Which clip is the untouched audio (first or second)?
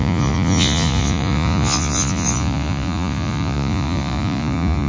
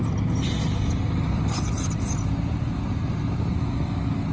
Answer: second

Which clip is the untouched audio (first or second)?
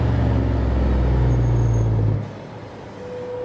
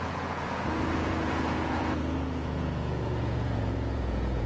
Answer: first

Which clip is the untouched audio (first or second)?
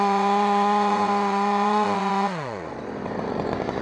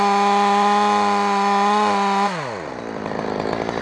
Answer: second